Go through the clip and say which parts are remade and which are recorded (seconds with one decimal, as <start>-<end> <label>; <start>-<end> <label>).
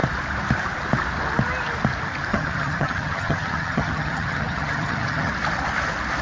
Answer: 0.0-2.3 recorded; 2.3-5.3 remade; 5.3-6.2 recorded